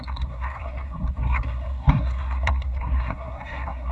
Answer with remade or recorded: remade